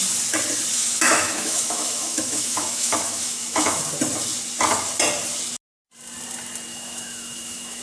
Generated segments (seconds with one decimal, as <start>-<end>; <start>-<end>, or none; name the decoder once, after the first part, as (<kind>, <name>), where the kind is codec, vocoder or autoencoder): 0.7-3.8 (autoencoder, DAC-VAE); 6.7-7.8